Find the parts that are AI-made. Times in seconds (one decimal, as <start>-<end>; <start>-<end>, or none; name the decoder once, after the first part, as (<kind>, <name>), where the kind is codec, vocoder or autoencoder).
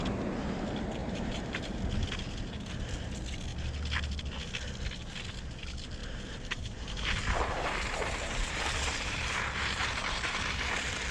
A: 1.0-1.9 (vocoder, BigVGAN v2); 6.0-10.7